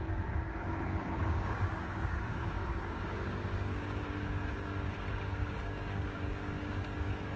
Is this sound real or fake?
fake